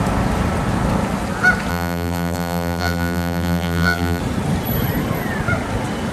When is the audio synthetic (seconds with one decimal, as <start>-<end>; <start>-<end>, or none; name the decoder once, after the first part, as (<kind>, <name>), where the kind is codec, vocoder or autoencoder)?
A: 1.7-4.2 (vocoder, BigVGAN v2)